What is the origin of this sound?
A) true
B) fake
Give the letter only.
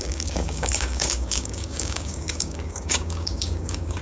B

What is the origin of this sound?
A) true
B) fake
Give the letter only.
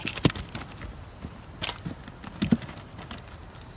A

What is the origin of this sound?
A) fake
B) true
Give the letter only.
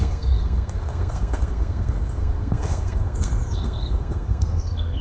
A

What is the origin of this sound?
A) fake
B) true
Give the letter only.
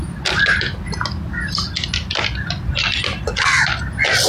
B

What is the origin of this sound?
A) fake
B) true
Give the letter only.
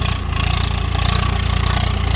A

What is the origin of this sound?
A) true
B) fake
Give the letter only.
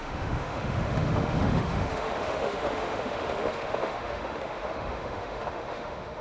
B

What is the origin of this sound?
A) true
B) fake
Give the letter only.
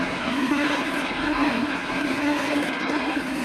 B